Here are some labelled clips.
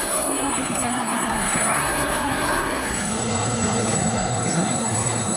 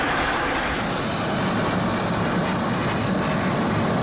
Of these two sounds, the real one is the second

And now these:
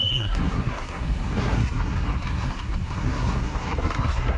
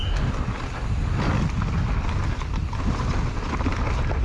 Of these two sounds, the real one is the second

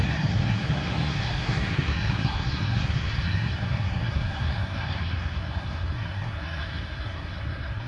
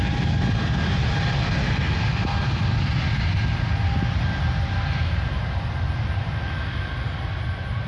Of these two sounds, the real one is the second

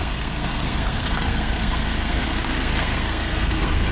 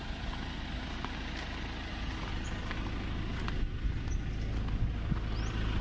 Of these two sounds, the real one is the second